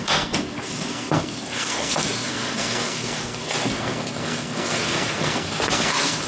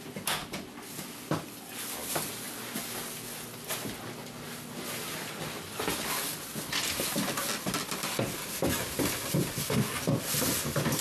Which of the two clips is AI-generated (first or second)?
first